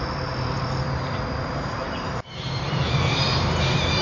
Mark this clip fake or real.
fake